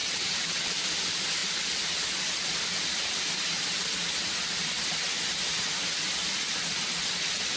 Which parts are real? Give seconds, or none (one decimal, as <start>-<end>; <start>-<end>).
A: 0.7-7.6